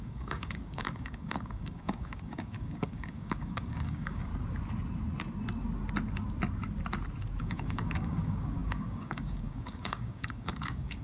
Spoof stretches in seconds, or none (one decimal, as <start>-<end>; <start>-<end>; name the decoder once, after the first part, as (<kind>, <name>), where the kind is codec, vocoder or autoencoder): 0.0-4.3 (codec, DAC); 7.4-11.0